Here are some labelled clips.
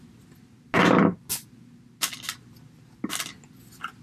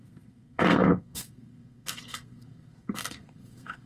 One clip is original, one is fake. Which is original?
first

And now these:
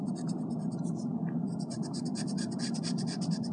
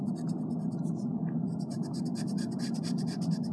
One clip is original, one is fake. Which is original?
second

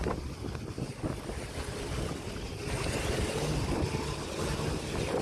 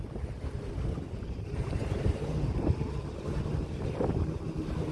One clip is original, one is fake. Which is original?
first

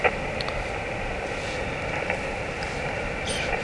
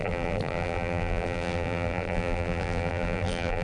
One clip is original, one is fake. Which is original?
first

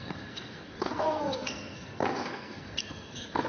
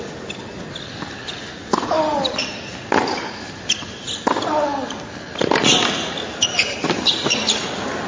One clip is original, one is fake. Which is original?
second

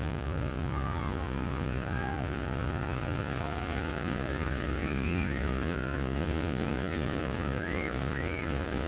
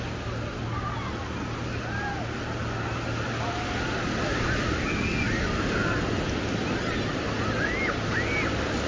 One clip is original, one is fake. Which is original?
second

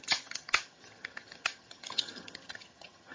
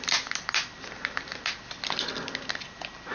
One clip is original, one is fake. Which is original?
second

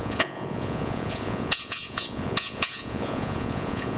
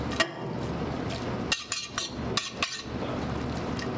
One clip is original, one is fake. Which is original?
second